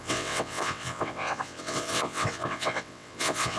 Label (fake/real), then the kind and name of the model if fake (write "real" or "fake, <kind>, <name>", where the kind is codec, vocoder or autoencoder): fake, vocoder, WaveNeXt